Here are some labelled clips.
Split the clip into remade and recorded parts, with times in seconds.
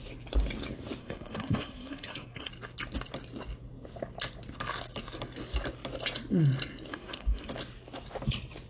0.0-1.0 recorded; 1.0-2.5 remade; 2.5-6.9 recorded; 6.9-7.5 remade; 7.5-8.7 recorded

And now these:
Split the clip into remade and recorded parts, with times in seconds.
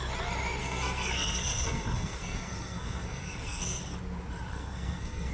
0.0-0.6 recorded; 0.6-3.8 remade; 3.8-4.5 recorded; 4.5-5.3 remade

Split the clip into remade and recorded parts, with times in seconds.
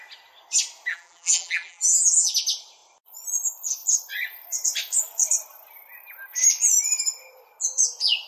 0.0-0.9 recorded; 0.9-2.3 remade; 2.3-8.3 recorded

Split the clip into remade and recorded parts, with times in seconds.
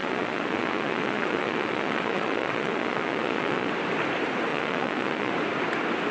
0.0-3.7 remade; 3.7-4.5 recorded; 4.5-5.3 remade; 5.3-6.1 recorded